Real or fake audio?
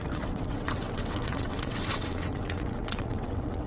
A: fake